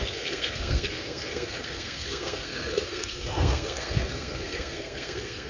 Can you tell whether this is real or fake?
fake